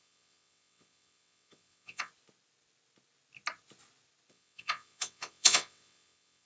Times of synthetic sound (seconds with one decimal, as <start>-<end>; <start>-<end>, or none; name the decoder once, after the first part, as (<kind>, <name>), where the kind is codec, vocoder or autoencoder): 0.0-2.1 (vocoder, WaveNeXt); 4.3-6.5